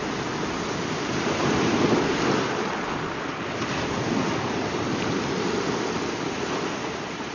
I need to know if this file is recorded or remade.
recorded